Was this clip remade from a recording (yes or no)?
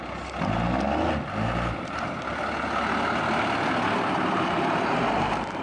no